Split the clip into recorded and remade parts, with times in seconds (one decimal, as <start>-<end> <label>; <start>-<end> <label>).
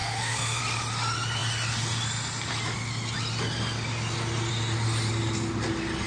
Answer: 0.0-0.6 remade; 0.6-6.1 recorded